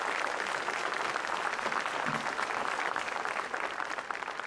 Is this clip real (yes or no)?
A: yes